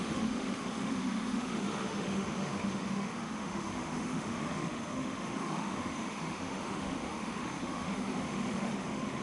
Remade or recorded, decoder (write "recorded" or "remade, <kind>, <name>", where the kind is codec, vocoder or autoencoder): remade, autoencoder, DAC-VAE